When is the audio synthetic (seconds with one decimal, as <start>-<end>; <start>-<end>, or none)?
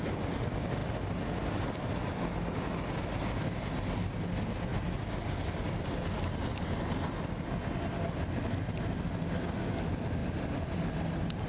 none